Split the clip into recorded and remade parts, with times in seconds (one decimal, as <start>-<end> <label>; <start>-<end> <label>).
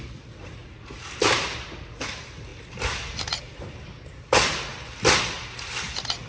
0.0-0.6 recorded; 0.6-1.1 remade; 1.1-6.3 recorded